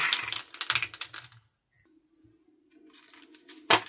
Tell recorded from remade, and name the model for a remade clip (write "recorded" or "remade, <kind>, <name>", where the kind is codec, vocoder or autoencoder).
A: recorded